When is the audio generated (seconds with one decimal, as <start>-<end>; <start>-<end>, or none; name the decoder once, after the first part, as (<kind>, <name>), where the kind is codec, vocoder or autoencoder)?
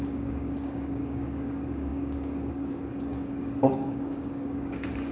0.0-5.1 (codec, DAC)